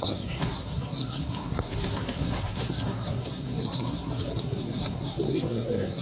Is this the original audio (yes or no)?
no